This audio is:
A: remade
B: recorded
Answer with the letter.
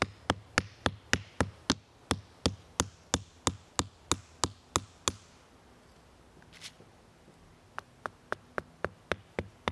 B